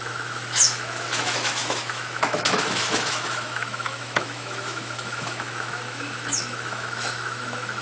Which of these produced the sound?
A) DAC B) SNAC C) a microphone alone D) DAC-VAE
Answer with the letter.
D